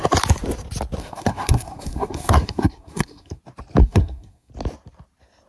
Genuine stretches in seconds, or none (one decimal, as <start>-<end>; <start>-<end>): 0.0-1.0; 3.4-3.8; 4.5-5.5